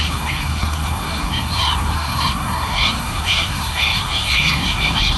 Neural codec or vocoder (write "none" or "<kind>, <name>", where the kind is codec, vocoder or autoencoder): codec, SNAC